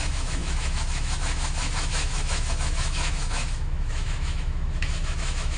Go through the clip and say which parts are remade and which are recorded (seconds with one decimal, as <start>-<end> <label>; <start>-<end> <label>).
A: 0.0-5.6 remade